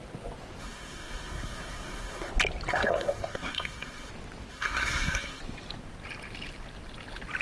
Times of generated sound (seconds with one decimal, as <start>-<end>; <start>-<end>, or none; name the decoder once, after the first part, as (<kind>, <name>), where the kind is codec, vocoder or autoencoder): 0.6-2.3 (codec, SNAC); 2.7-4.1; 4.5-5.4